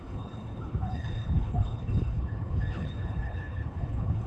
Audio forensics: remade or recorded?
remade